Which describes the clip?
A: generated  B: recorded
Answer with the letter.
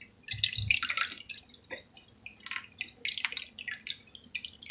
B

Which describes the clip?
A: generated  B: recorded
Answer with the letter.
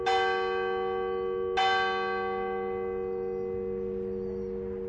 B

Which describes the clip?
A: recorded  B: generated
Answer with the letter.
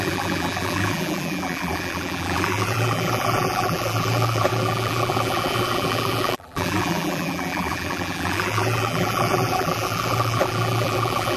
B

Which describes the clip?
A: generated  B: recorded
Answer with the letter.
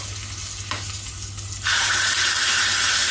B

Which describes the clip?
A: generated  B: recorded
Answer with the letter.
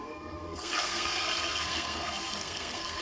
A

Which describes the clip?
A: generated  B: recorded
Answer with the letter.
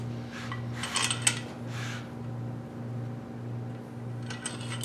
B